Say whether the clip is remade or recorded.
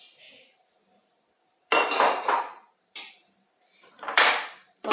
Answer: remade